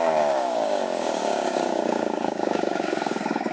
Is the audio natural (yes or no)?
no